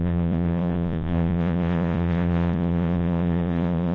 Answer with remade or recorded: remade